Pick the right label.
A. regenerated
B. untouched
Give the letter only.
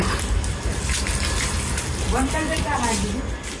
B